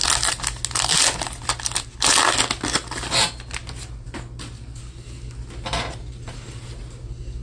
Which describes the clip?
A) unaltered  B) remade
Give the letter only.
A